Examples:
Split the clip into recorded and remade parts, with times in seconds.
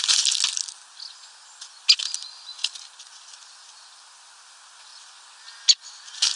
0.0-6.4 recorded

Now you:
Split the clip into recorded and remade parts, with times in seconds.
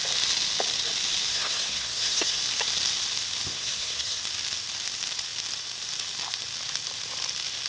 0.0-1.3 recorded; 1.3-2.4 remade; 2.4-3.5 recorded; 3.5-4.2 remade; 4.2-7.7 recorded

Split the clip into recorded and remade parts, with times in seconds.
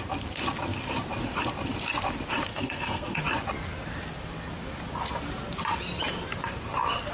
0.0-2.5 recorded; 2.5-3.2 remade; 3.2-7.1 recorded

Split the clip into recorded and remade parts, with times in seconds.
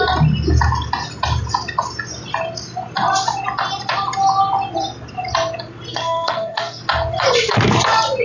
0.0-5.9 recorded; 5.9-6.8 remade; 6.8-8.2 recorded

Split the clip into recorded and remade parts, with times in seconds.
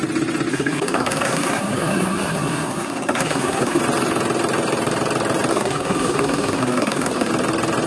0.0-0.5 recorded; 0.5-3.8 remade; 3.8-5.5 recorded; 5.5-7.3 remade; 7.3-7.9 recorded